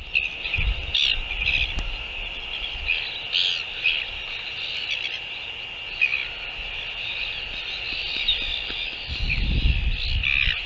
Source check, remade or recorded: recorded